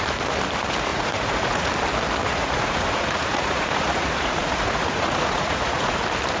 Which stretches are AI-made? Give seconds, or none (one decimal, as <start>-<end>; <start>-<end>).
0.9-1.7; 2.2-6.0